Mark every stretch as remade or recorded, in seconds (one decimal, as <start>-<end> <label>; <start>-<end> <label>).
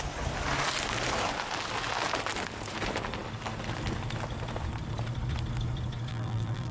0.0-6.1 recorded; 6.1-6.7 remade